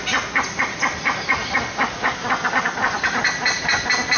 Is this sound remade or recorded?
recorded